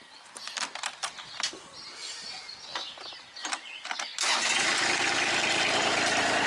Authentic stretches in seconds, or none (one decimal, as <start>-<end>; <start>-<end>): 4.1-6.5